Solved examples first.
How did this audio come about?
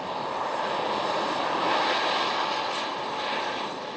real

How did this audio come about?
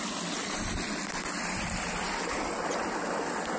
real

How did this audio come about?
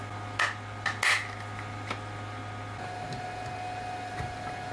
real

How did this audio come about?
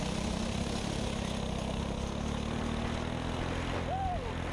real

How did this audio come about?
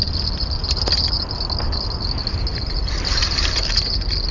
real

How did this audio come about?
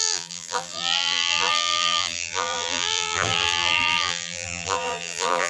fake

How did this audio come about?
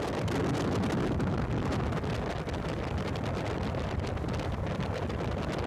real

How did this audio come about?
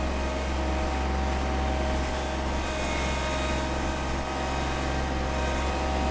real